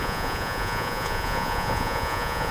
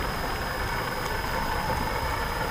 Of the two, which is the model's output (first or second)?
first